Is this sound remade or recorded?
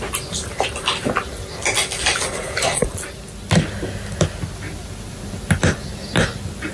recorded